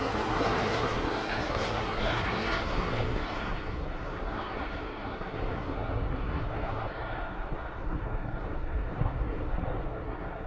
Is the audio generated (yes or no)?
yes